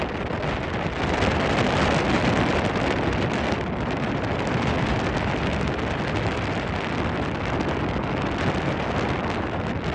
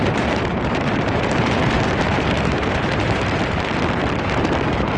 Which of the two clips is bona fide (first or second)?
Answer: first